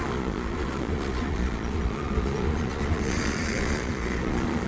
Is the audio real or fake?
fake